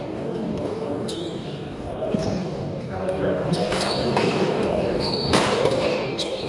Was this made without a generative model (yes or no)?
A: no